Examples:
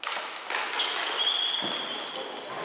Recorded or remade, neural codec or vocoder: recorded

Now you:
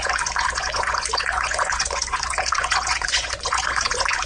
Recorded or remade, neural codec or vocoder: remade, vocoder, Vocos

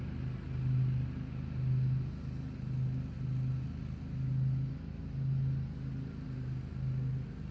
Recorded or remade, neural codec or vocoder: recorded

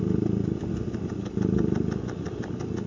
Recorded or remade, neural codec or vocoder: recorded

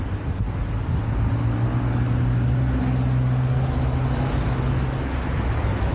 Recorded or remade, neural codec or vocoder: recorded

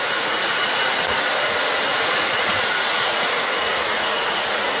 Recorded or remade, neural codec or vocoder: remade, vocoder, Vocos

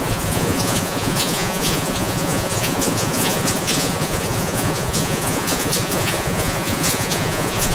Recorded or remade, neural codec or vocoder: remade, vocoder, Vocos